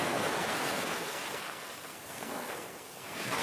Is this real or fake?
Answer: fake